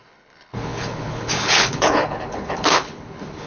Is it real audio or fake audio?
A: fake